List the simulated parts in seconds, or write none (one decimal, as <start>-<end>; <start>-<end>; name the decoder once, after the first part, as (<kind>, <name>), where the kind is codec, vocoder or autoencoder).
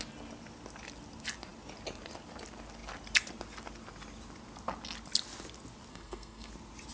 5.9-6.5 (codec, SNAC)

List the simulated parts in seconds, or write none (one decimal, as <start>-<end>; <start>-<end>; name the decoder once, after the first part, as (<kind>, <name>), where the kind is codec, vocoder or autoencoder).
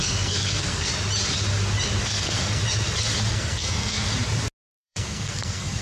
0.0-0.9 (codec, SNAC); 2.0-2.6; 3.3-4.1; 4.7-5.8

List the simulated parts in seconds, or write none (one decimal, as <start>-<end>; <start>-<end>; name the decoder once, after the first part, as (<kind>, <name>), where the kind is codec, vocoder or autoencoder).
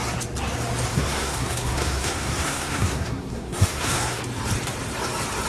0.9-4.2 (codec, SNAC)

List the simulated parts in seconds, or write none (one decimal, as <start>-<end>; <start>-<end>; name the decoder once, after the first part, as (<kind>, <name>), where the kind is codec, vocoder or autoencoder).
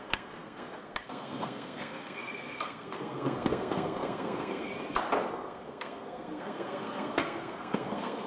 0.0-4.7 (codec, SNAC); 5.3-8.3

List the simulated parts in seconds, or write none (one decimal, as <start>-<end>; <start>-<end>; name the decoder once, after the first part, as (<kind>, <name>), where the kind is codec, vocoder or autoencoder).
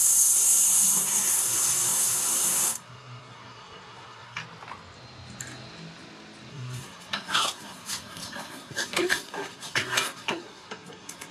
0.0-4.4 (codec, SNAC); 6.5-11.3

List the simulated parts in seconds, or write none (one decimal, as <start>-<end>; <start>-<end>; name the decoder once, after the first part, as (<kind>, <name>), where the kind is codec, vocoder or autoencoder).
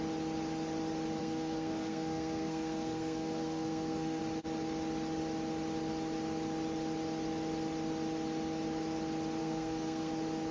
1.2-4.2 (codec, SNAC); 9.4-10.1